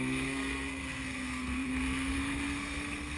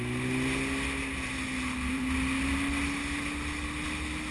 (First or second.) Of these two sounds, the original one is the second